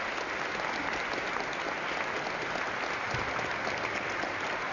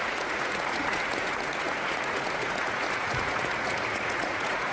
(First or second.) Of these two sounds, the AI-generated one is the second